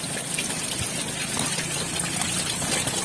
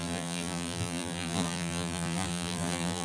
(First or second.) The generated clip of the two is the second